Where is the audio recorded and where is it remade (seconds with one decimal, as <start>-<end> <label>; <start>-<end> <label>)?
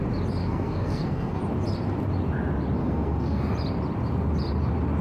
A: 0.0-0.4 recorded; 0.4-1.4 remade; 1.4-2.8 recorded; 2.8-3.5 remade; 3.5-5.0 recorded